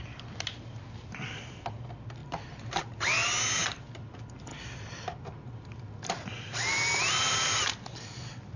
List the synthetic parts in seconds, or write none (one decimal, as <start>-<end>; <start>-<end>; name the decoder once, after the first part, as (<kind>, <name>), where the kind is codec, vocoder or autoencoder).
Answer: none